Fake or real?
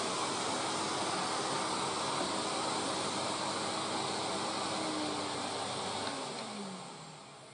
real